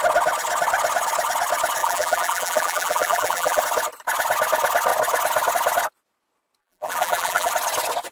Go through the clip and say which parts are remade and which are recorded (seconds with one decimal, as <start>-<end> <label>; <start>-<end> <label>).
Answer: 0.0-1.8 recorded; 1.8-3.6 remade; 3.6-6.6 recorded; 6.6-7.5 remade; 7.5-8.1 recorded